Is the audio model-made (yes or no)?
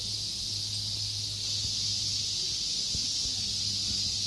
no